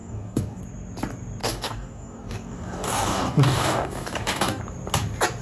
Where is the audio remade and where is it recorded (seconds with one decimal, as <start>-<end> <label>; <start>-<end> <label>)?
0.0-0.6 remade; 0.6-1.4 recorded; 1.4-4.6 remade; 4.6-5.4 recorded